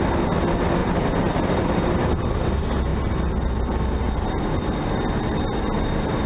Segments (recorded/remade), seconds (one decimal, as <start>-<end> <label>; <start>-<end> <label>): 0.0-0.8 recorded; 0.8-2.1 remade; 2.1-6.3 recorded